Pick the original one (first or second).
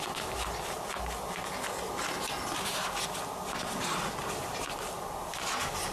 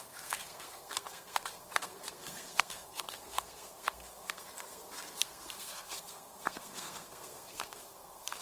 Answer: first